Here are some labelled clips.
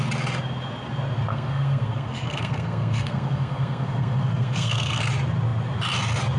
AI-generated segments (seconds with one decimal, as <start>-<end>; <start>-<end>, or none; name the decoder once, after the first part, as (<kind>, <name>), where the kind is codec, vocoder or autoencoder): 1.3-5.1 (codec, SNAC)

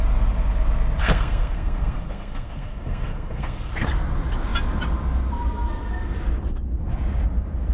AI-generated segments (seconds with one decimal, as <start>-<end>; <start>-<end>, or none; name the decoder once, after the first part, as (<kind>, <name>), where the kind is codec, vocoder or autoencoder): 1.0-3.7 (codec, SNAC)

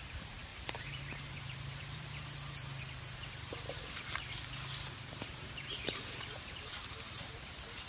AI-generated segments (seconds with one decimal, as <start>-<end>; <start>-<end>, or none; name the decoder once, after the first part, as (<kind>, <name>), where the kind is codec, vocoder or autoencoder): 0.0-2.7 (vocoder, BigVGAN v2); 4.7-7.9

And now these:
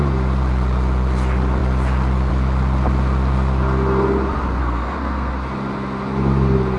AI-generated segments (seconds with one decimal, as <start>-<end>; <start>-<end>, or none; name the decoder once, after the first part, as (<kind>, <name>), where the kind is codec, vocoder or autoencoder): 4.6-5.3 (codec, SNAC)

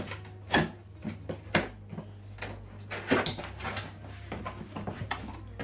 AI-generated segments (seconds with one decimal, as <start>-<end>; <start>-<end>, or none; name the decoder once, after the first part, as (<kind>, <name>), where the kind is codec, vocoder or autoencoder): none

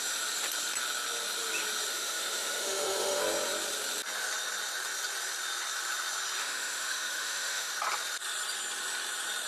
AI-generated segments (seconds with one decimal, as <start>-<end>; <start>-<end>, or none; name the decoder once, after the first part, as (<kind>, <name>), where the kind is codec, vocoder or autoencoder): 1.9-3.2 (autoencoder, DAC-VAE); 6.4-7.7

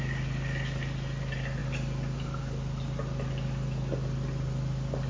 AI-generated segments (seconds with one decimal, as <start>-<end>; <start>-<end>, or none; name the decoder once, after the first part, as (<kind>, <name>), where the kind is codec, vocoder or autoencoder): none

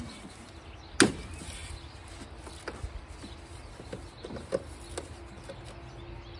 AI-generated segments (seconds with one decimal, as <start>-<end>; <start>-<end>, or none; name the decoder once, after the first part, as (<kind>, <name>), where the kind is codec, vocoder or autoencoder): none